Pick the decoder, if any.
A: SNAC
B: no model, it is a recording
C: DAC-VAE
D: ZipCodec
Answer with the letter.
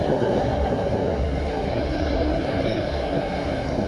A